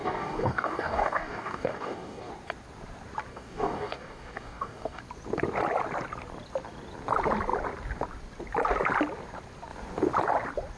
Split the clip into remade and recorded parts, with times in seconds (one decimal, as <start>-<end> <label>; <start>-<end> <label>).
0.0-2.3 remade; 2.3-3.3 recorded; 3.3-5.0 remade; 5.0-10.8 recorded